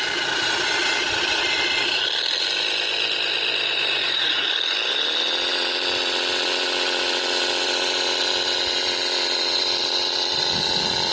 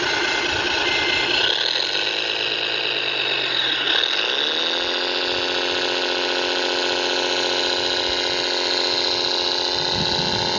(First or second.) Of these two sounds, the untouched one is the second